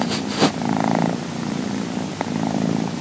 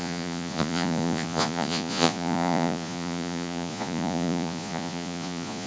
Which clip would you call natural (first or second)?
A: first